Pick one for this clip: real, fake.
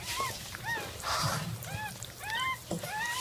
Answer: fake